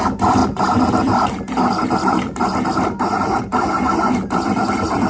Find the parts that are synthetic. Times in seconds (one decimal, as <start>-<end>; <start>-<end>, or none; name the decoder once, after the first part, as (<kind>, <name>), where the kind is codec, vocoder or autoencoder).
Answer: 0.4-2.8 (vocoder, BigVGAN v2); 3.5-5.1